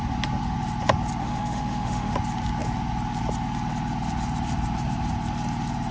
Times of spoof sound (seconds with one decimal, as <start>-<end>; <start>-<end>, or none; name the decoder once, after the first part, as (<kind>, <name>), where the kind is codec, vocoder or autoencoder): 1.2-2.1 (autoencoder, DAC-VAE)